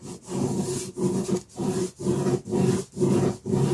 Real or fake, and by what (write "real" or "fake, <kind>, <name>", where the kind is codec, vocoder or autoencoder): real